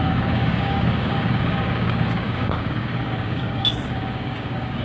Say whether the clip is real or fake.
fake